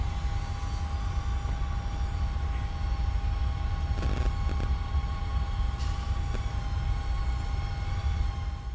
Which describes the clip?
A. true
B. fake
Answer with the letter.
A